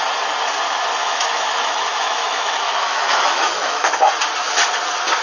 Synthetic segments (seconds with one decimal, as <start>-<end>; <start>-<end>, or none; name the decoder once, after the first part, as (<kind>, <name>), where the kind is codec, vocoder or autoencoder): 1.0-4.1 (autoencoder, DAC-VAE)